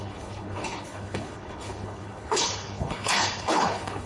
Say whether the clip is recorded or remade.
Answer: remade